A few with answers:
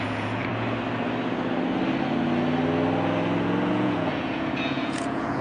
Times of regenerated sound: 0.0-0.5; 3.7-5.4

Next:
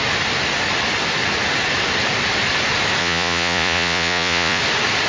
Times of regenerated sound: 3.0-4.6

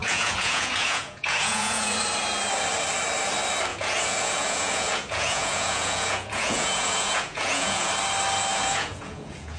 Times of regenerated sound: 0.0-2.0; 3.7-7.9; 8.5-9.6

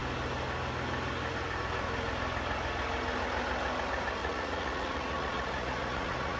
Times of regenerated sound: 4.2-6.4